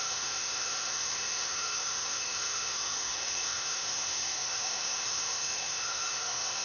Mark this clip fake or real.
fake